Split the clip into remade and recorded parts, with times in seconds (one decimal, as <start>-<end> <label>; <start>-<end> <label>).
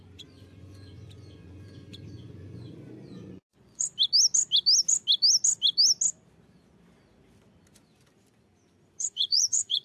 0.0-3.9 remade; 3.9-8.9 recorded; 8.9-9.8 remade